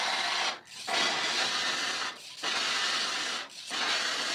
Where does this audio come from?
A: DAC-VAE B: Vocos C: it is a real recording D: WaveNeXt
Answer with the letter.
C